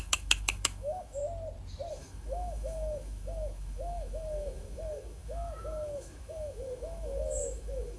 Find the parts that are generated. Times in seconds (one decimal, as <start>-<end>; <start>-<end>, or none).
0.0-1.2; 1.9-8.0